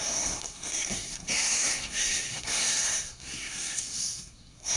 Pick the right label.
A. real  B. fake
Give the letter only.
B